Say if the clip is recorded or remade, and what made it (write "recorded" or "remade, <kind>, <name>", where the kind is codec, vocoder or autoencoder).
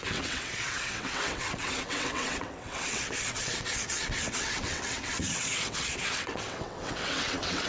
remade, vocoder, WaveNeXt